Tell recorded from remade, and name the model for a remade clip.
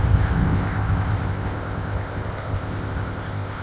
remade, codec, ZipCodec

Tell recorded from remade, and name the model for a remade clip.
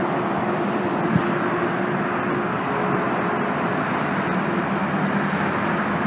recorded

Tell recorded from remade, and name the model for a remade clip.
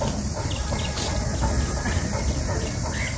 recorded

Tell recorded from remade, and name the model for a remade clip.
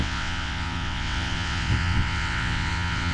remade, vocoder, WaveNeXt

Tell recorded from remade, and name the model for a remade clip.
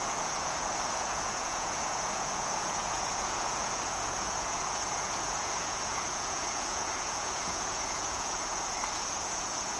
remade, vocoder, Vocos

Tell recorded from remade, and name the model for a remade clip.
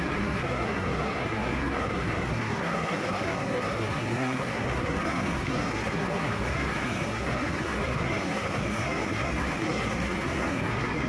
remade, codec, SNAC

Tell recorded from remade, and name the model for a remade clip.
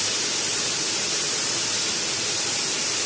recorded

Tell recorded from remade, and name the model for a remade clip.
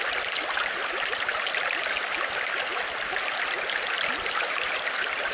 recorded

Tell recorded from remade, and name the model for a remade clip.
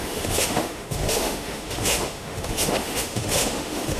remade, autoencoder, DAC-VAE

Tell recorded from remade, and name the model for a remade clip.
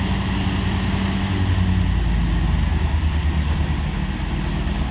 recorded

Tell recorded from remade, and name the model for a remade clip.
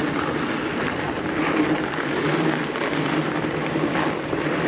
recorded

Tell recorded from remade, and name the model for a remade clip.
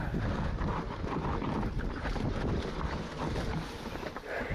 recorded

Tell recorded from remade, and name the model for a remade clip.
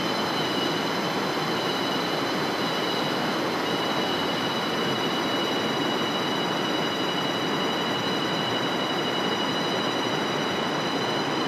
recorded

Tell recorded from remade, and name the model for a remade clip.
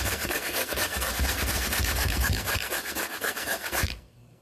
remade, codec, SNAC